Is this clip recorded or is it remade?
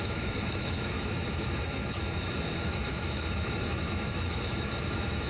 remade